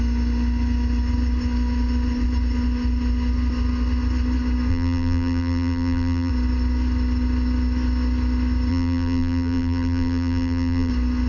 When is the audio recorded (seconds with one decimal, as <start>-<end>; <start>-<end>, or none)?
0.0-4.7; 6.3-8.7; 10.9-11.3